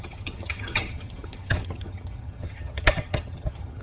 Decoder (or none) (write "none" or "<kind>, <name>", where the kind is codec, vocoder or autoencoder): vocoder, HiFi-GAN